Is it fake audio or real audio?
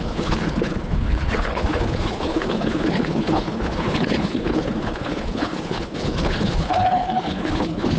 fake